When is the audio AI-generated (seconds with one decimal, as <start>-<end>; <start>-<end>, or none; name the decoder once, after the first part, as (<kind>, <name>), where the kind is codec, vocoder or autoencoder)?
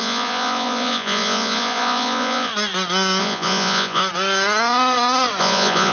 0.0-2.5 (vocoder, Vocos); 3.2-4.0; 5.4-5.9